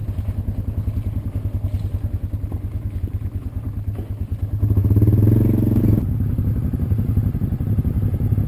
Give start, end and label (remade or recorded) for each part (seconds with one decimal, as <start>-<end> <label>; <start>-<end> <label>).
0.0-8.5 recorded